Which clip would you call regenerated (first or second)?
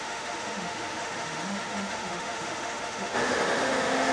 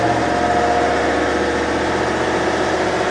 first